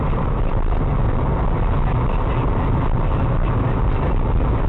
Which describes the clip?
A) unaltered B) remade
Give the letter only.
A